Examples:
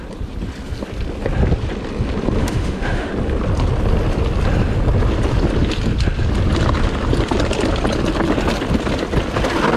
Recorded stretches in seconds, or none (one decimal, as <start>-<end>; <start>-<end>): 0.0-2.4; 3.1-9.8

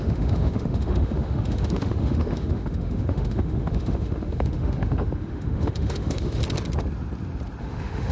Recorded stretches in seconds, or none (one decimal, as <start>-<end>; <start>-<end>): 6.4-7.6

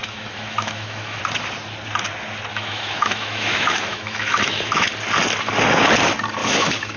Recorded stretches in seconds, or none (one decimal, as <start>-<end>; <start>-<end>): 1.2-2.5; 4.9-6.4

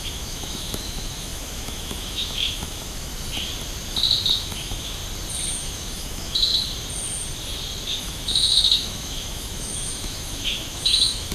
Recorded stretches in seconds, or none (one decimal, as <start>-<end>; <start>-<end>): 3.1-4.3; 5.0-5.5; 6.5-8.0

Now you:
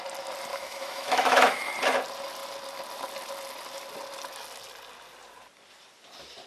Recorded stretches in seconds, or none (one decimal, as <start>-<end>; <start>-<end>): 0.0-0.5; 1.7-6.5

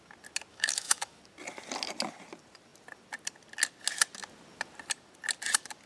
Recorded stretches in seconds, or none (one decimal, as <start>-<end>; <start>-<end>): 0.0-0.5; 1.2-5.9